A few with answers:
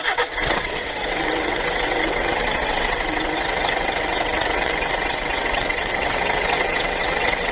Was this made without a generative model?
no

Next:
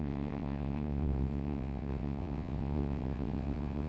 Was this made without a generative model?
no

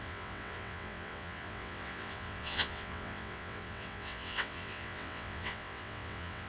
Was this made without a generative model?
no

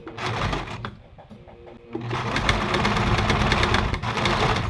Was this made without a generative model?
yes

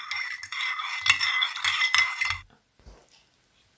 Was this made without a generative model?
yes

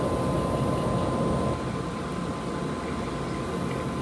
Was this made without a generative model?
yes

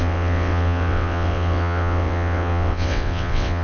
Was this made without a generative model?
no